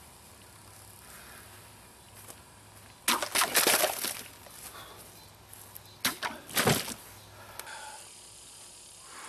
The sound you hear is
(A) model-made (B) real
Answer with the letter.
B